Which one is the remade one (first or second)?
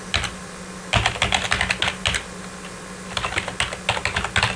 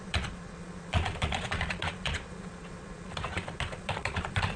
second